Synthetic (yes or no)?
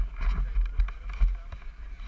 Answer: no